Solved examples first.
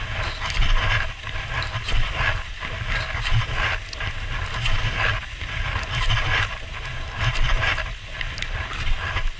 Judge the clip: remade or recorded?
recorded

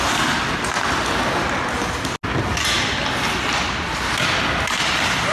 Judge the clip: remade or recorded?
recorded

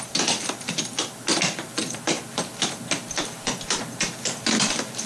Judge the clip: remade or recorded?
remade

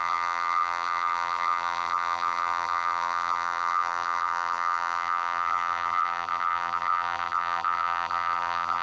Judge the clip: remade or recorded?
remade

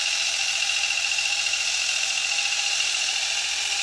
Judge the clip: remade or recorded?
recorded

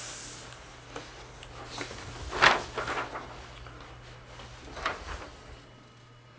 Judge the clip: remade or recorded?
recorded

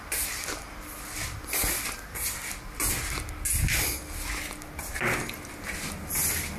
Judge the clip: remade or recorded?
recorded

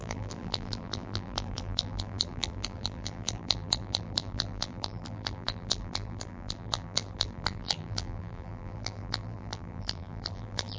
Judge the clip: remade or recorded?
remade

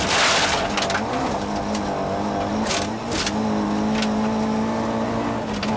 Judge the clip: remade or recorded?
recorded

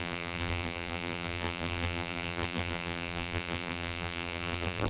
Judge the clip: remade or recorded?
remade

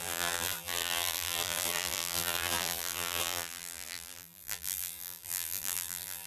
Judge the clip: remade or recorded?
remade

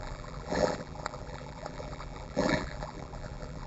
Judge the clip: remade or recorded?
remade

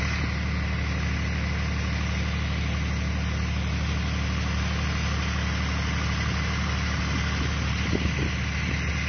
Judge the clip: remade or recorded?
recorded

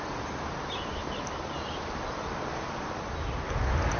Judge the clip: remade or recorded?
recorded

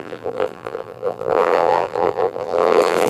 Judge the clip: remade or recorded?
remade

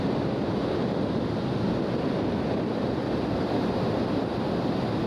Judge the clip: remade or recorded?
remade